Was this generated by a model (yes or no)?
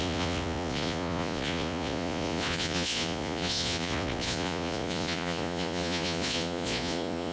yes